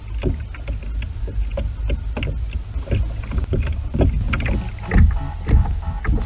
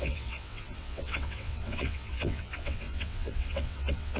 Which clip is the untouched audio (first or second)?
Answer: first